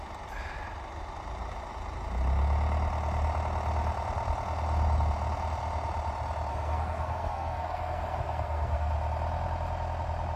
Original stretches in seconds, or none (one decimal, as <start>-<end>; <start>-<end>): 0.0-6.5; 8.9-10.4